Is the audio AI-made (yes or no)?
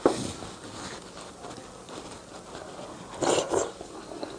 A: no